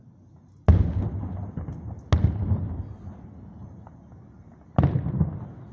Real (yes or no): yes